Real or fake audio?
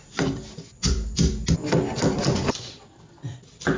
real